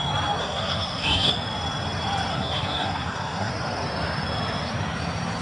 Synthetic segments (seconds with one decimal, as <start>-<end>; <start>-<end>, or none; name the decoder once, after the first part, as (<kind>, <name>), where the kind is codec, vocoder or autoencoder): 0.4-1.3 (codec, SNAC); 2.3-3.5